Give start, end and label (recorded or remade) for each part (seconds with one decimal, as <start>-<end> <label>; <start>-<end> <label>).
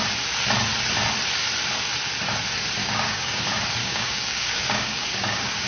0.0-2.8 recorded; 2.8-3.4 remade; 3.4-3.8 recorded; 3.8-5.7 remade